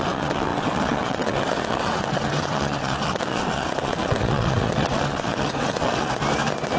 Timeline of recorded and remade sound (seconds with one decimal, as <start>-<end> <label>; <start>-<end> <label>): 0.0-6.1 remade; 6.1-6.8 recorded